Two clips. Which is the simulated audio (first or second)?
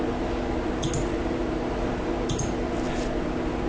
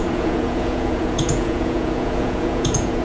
second